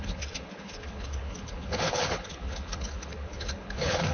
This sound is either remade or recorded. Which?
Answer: remade